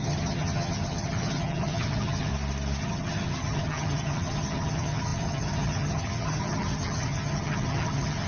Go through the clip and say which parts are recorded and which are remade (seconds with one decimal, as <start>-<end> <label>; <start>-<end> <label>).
0.0-2.3 remade; 2.3-2.8 recorded; 2.8-8.3 remade